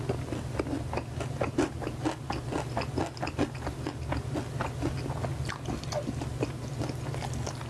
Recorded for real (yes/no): yes